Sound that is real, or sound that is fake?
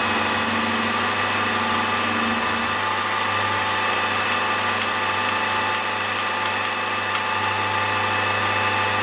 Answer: real